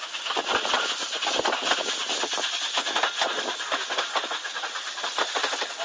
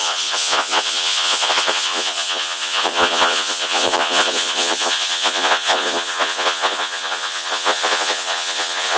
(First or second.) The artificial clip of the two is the second